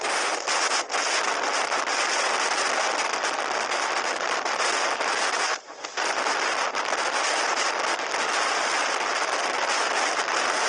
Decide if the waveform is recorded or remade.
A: recorded